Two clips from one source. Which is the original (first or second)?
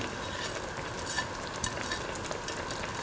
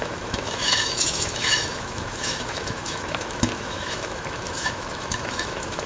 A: first